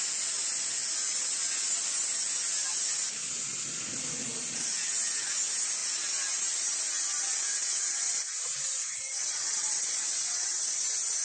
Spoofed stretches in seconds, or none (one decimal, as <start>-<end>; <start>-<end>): 7.3-10.6